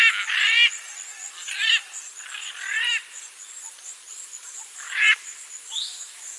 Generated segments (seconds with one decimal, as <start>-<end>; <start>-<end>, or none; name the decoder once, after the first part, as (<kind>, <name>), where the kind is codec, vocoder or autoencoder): 4.1-6.4 (autoencoder, DAC-VAE)